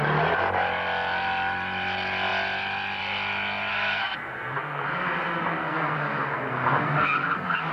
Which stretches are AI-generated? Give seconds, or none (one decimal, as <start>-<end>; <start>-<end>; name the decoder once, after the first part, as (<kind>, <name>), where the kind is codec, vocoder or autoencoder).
3.7-7.7 (codec, SNAC)